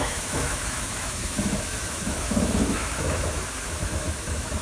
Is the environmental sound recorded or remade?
remade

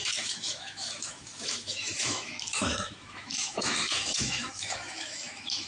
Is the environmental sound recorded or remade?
remade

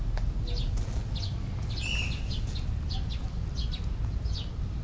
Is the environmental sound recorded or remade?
recorded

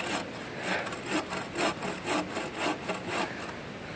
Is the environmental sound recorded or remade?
recorded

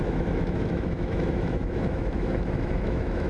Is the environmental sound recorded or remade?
remade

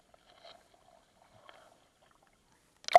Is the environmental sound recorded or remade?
recorded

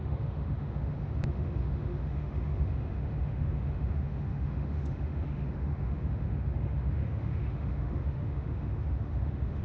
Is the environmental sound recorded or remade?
remade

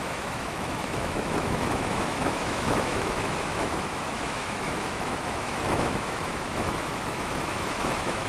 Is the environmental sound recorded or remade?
remade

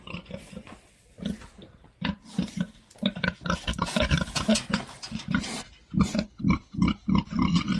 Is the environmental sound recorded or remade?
recorded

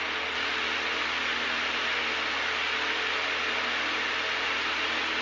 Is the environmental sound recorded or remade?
recorded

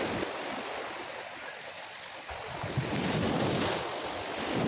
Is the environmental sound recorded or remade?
recorded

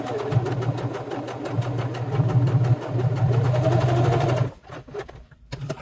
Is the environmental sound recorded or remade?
recorded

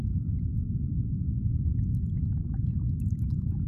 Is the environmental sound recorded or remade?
remade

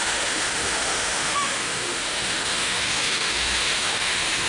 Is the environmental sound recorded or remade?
remade